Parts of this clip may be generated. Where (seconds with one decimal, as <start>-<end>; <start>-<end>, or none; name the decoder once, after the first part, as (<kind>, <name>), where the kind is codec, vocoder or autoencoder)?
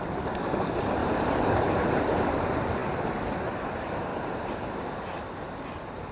1.0-2.0 (vocoder, BigVGAN v2); 4.1-5.2